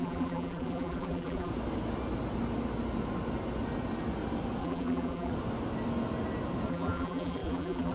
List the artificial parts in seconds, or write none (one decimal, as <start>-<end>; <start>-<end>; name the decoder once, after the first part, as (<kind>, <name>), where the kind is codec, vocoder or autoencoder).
0.0-1.5 (vocoder, BigVGAN v2); 4.6-5.3; 6.7-7.9